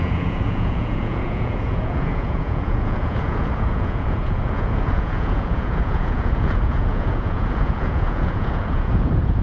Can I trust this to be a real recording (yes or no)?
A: no